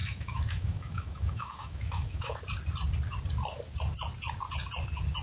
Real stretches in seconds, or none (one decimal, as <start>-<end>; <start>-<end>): 2.4-5.2